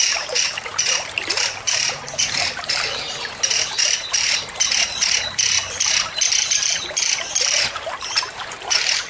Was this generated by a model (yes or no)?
yes